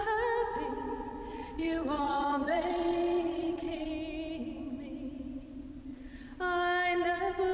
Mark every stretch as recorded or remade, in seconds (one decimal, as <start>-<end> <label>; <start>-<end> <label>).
0.0-1.3 recorded; 1.3-3.9 remade; 3.9-5.9 recorded; 5.9-6.4 remade; 6.4-7.5 recorded